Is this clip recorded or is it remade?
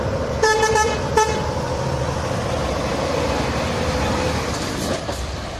remade